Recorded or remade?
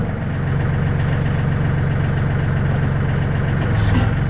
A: recorded